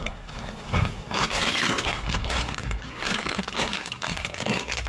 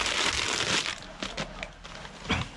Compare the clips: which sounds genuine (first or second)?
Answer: second